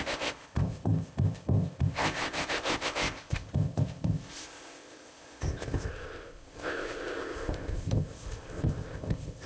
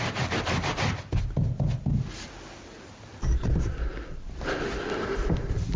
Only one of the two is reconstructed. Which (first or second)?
first